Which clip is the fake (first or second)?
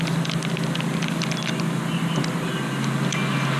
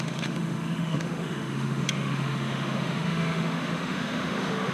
second